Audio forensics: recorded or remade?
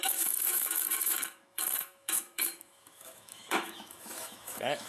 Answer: remade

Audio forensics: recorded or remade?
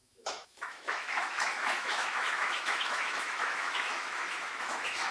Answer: remade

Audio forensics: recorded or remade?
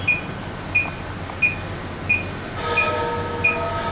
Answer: recorded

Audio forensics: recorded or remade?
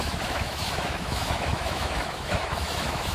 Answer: remade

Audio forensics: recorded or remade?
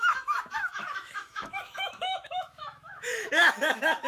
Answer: remade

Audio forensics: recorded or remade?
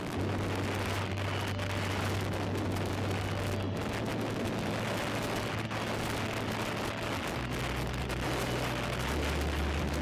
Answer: recorded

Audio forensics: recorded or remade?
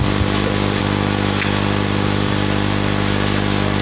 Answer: recorded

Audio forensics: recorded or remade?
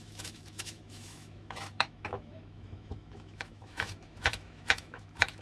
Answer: remade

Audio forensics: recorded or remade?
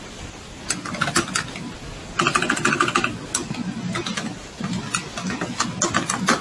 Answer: recorded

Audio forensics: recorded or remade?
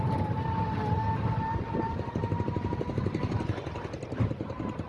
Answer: recorded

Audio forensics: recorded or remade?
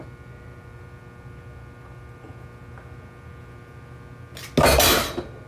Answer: recorded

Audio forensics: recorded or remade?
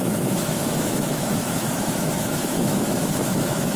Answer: remade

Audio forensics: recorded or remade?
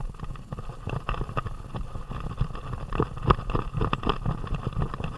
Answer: recorded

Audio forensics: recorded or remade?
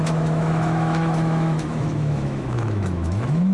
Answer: remade